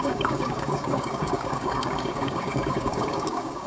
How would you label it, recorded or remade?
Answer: remade